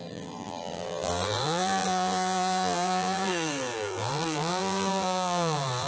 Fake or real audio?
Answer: fake